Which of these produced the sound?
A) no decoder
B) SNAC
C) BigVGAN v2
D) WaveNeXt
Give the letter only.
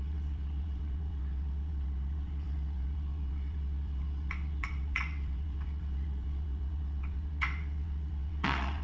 D